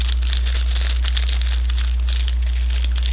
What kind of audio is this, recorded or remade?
recorded